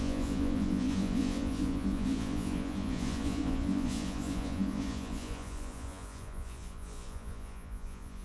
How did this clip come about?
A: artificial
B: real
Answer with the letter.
A